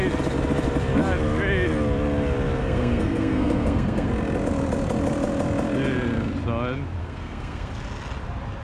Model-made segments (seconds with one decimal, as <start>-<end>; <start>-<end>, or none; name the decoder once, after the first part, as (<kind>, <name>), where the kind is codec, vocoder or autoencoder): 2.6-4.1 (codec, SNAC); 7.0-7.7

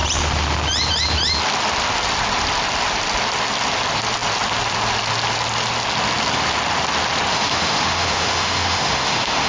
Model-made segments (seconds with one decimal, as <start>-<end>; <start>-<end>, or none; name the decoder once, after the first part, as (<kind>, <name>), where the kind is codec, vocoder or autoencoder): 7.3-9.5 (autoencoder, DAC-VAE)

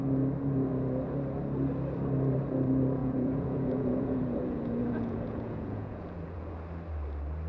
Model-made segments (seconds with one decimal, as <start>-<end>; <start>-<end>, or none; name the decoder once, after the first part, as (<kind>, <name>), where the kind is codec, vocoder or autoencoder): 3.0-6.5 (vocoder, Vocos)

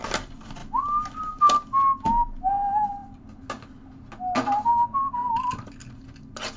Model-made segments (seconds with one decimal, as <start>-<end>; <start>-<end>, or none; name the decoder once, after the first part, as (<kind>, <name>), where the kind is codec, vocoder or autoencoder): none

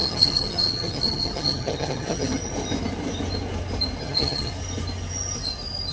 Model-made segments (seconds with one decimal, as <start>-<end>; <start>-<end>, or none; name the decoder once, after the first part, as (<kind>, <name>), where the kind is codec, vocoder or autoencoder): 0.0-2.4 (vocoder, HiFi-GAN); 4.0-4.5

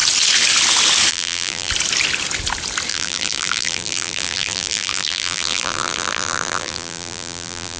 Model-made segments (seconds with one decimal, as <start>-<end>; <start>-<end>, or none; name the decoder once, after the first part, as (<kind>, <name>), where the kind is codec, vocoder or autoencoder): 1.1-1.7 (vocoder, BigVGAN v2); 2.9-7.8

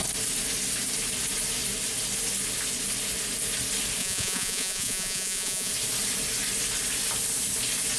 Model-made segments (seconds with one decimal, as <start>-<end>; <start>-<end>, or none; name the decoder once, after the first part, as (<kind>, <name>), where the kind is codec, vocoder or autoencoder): 4.0-5.7 (vocoder, Vocos)